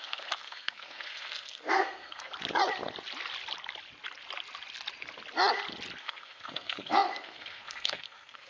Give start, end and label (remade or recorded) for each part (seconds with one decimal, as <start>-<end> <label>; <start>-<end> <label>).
0.0-2.3 remade; 2.3-6.0 recorded; 6.0-8.5 remade